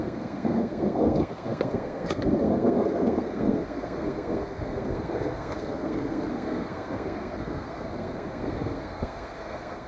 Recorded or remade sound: remade